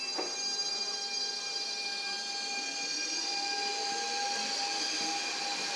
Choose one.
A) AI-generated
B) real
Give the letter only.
B